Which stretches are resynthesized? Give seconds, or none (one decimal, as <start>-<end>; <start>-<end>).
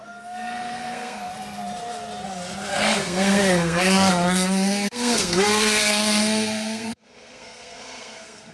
0.0-1.3; 2.7-8.5